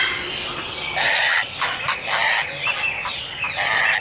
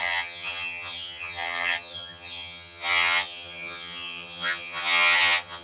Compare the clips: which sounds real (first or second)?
first